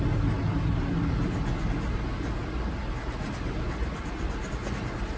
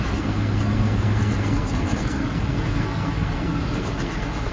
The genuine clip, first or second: first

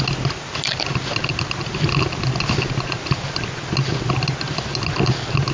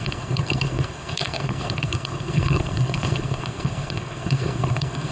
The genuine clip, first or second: first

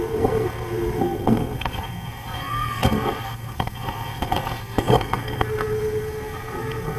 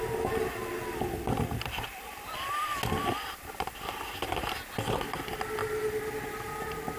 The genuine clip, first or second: second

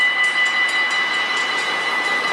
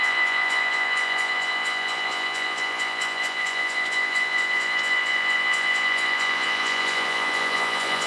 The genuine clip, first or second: first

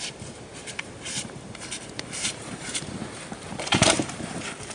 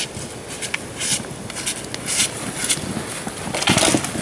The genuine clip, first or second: second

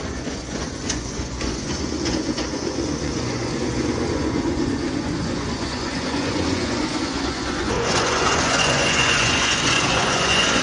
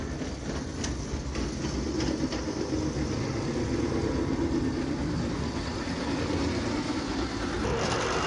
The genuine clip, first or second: second